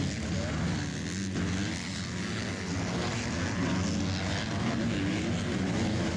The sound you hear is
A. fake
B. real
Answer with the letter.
B